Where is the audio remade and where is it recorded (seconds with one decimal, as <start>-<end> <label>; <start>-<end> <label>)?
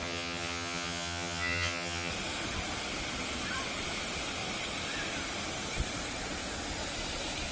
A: 0.0-2.1 remade; 2.1-7.5 recorded